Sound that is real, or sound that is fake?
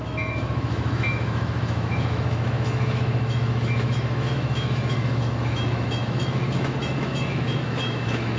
fake